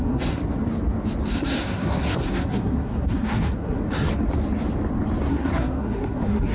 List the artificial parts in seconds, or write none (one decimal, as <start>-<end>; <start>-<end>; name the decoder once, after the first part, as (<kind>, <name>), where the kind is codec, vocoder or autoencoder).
0.0-0.4 (codec, SNAC); 1.3-3.8; 5.3-6.5